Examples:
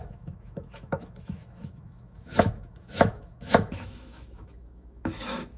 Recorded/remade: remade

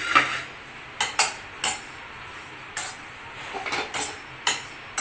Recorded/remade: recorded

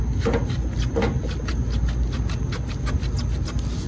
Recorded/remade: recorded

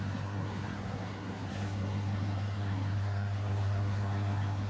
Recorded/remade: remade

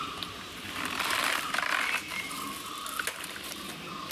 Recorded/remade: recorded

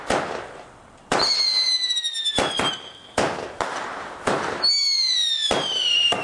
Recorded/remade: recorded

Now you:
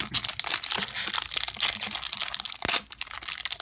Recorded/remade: recorded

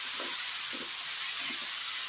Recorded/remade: recorded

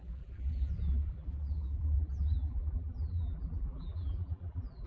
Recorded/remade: remade